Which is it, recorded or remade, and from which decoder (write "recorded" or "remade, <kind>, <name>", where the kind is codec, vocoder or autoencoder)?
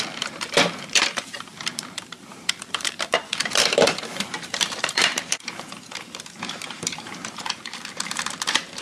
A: remade, vocoder, BigVGAN v2